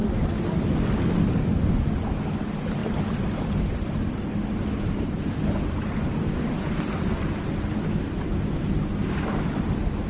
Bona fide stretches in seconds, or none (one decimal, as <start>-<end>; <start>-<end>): 0.0-2.8; 6.7-10.1